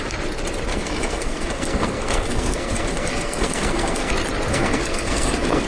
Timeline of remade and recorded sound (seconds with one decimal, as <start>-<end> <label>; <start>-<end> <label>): 0.0-0.7 recorded; 0.7-4.1 remade; 4.1-4.5 recorded; 4.5-5.7 remade